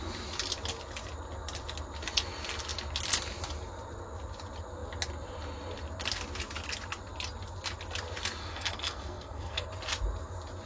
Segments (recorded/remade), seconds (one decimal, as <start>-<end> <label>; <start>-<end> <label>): 0.0-8.4 recorded; 8.4-9.7 remade; 9.7-10.7 recorded